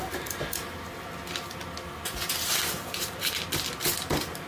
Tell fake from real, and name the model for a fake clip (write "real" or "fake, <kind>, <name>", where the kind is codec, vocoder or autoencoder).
real